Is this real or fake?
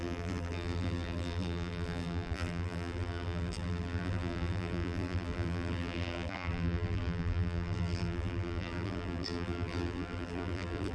fake